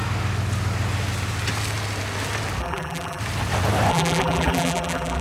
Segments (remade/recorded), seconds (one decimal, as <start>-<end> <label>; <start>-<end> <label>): 0.0-2.6 recorded; 2.6-3.2 remade; 3.2-3.9 recorded; 3.9-5.2 remade